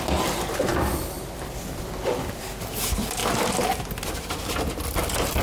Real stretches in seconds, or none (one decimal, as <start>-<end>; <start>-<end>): 0.0-0.7; 2.5-5.4